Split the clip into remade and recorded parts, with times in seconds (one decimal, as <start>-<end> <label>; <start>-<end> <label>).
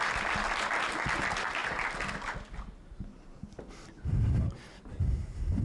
0.0-5.6 recorded